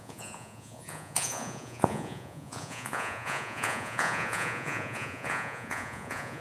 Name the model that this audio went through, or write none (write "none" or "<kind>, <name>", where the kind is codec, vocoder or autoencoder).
vocoder, Vocos